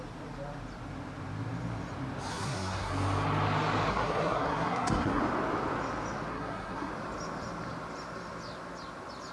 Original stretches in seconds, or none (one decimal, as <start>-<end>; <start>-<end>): 0.0-2.3; 2.9-3.9; 5.2-6.3; 6.9-9.3